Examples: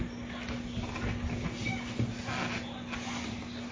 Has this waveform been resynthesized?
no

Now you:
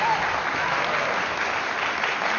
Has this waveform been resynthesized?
no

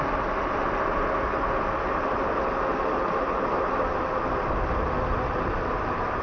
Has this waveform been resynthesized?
no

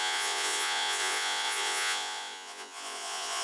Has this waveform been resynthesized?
yes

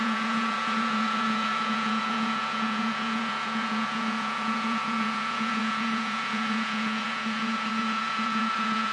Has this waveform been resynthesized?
yes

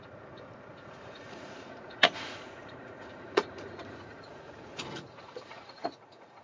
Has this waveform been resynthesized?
yes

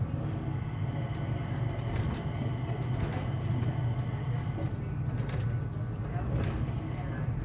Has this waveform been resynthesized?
no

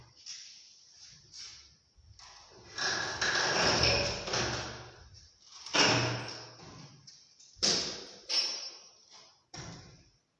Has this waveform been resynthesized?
no